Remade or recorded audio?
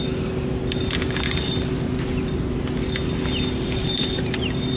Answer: recorded